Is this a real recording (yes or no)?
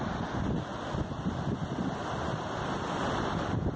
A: yes